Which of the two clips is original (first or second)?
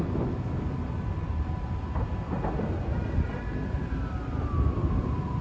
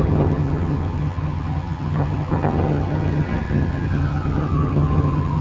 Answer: first